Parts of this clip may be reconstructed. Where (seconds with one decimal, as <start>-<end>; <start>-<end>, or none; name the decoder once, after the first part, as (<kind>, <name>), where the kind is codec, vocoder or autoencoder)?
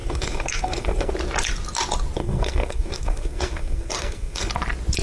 0.0-1.1 (codec, SNAC); 2.2-4.5